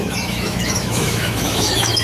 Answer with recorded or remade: remade